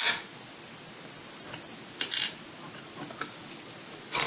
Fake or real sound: real